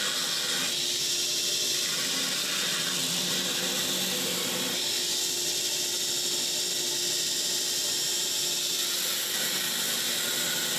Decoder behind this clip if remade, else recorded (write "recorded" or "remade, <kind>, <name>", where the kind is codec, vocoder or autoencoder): recorded